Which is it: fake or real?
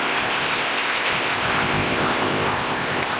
fake